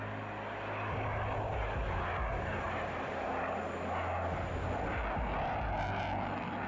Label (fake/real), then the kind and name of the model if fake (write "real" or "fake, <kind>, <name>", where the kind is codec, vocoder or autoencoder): real